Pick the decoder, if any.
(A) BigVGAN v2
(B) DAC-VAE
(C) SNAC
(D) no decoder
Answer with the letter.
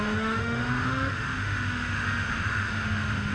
B